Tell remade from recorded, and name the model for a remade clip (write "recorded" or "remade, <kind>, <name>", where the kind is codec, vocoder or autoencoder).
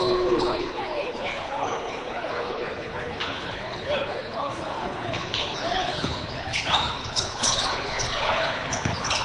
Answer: remade, codec, HILCodec